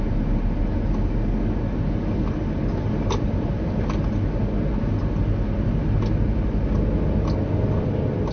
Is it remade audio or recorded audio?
recorded